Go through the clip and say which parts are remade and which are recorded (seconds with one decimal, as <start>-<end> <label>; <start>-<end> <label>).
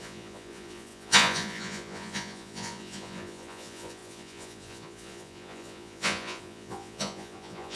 0.0-7.8 remade